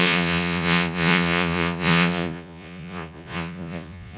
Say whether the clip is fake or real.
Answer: fake